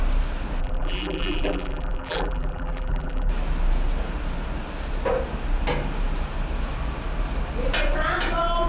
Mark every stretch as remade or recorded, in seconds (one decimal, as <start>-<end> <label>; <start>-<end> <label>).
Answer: 0.0-0.6 recorded; 0.6-3.3 remade; 3.3-8.7 recorded

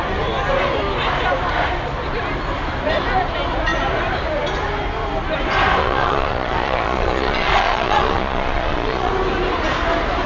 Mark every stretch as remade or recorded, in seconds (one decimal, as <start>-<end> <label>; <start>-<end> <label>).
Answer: 0.0-5.8 recorded; 5.8-9.1 remade; 9.1-10.3 recorded

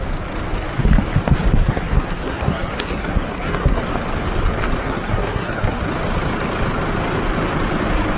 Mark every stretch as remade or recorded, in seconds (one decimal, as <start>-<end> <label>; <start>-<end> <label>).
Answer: 0.0-1.6 recorded; 1.6-3.8 remade; 3.8-4.8 recorded; 4.8-5.8 remade; 5.8-8.2 recorded

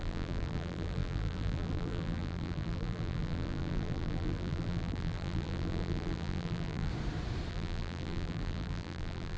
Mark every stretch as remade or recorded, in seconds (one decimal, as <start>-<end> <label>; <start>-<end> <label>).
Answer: 0.0-6.9 remade; 6.9-7.5 recorded; 7.5-9.4 remade

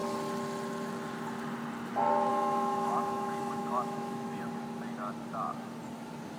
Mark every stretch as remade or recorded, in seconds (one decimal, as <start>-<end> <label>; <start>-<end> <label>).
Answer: 0.0-2.3 recorded; 2.3-4.4 remade; 4.4-6.4 recorded

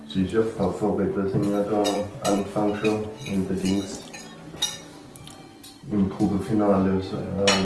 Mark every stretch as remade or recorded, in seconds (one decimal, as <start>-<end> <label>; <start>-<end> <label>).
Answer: 0.0-1.8 recorded; 1.8-2.4 remade; 2.4-3.3 recorded; 3.3-4.0 remade; 4.0-7.6 recorded

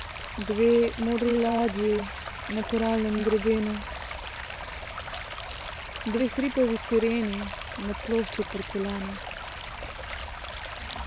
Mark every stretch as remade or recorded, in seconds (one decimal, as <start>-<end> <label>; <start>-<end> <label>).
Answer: 0.0-1.3 recorded; 1.3-2.7 remade; 2.7-11.1 recorded

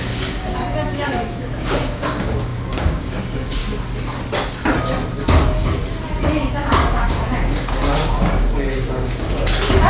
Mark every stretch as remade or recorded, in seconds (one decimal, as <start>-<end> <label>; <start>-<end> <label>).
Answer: 0.0-3.6 remade; 3.6-6.5 recorded; 6.5-9.9 remade